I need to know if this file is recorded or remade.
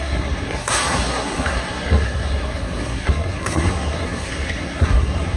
remade